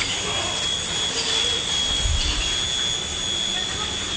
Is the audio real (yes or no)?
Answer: yes